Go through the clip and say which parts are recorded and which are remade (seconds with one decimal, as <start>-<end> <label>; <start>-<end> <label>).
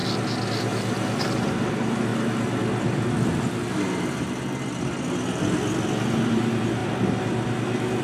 0.0-1.2 recorded; 1.2-2.1 remade; 2.1-6.3 recorded; 6.3-6.8 remade; 6.8-8.0 recorded